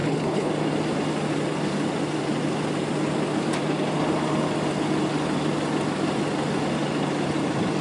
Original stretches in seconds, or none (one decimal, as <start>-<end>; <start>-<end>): 0.5-7.8